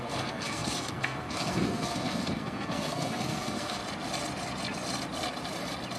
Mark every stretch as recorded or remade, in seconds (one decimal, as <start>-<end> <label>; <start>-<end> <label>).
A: 0.0-3.8 remade; 3.8-6.0 recorded